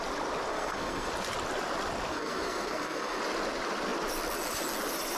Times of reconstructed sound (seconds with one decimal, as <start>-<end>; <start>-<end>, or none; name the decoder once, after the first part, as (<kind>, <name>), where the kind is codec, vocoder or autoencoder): 0.5-1.1 (codec, SNAC); 2.1-3.2